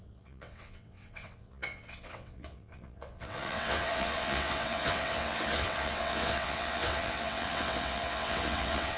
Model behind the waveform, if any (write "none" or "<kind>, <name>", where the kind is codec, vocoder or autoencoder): vocoder, WaveNeXt